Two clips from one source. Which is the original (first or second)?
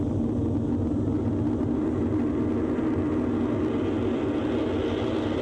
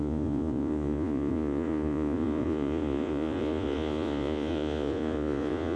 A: first